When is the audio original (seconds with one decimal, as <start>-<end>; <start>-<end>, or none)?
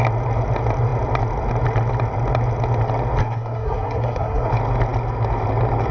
0.0-3.2; 4.5-5.9